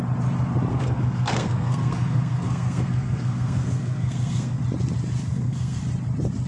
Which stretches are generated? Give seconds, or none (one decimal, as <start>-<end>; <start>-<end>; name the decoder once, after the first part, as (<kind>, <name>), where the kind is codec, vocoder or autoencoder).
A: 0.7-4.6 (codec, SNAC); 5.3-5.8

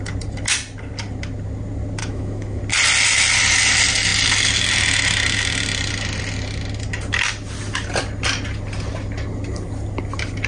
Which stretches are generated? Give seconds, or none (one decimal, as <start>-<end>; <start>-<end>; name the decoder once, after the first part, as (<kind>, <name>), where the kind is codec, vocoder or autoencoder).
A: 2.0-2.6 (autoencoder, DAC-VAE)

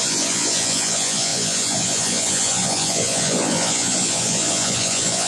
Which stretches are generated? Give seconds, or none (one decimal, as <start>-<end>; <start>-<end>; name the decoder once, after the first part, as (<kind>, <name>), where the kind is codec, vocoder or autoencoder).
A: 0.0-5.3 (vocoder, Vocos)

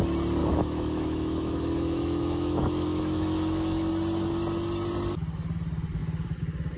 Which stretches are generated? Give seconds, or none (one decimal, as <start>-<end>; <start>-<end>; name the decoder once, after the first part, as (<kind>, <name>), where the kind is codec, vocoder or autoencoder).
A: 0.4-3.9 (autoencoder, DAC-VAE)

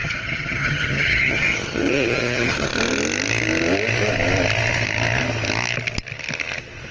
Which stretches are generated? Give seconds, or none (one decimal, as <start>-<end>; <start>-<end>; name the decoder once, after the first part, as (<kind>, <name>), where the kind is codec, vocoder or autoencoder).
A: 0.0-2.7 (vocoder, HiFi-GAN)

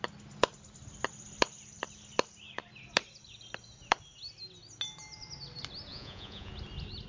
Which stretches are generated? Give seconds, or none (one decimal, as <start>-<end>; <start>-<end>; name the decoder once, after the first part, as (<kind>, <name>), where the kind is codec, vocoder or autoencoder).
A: 5.9-6.5 (vocoder, Vocos)

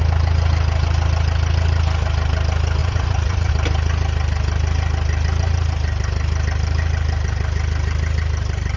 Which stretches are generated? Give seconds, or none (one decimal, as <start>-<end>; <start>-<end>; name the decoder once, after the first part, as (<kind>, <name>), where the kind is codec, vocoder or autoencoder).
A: 2.8-3.5 (vocoder, Vocos)